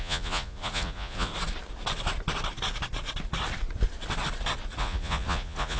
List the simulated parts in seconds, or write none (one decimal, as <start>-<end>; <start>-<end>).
0.0-1.3; 4.8-5.8